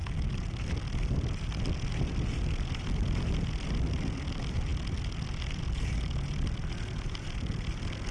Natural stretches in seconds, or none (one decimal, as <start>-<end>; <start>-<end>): 0.0-8.1